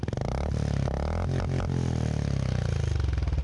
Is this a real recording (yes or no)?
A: yes